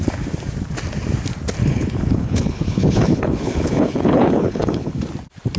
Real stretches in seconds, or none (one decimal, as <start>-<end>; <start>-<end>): 0.0-1.6; 5.0-5.6